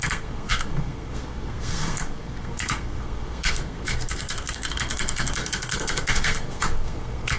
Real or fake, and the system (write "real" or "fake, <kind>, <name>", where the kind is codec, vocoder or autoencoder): fake, codec, SNAC